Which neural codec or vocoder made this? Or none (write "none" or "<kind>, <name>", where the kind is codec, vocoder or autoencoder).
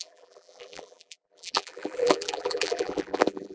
vocoder, BigVGAN v2